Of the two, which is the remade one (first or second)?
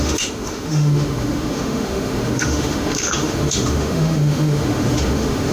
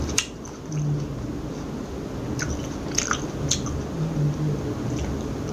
first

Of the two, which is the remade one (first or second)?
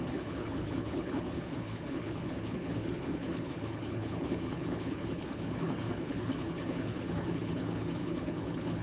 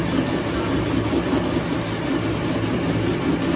first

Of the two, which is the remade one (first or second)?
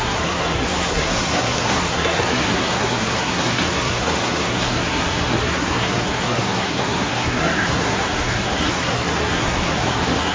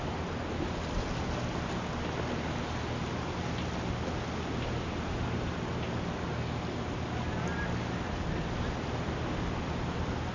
first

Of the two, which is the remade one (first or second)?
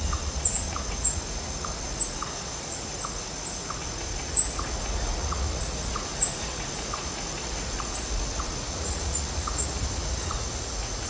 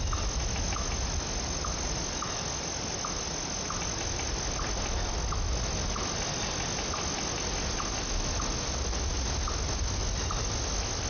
first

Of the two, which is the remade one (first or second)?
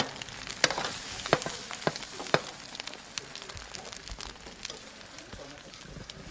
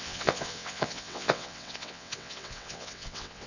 second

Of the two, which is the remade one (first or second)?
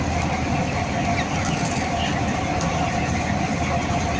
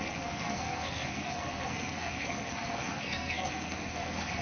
second